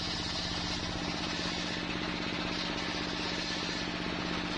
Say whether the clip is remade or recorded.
recorded